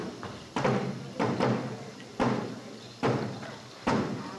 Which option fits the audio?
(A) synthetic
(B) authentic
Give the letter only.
B